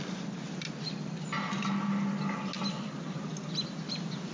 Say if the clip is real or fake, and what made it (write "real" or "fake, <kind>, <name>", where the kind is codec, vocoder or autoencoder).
real